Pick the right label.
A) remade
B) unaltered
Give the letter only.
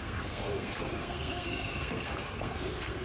A